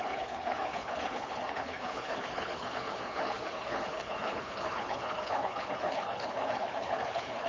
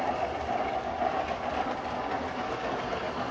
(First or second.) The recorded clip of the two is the second